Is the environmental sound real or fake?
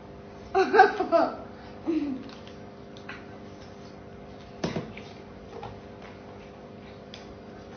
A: real